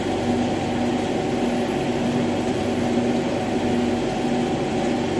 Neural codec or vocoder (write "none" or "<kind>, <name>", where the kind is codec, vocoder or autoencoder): none